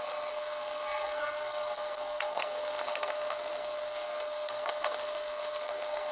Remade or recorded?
remade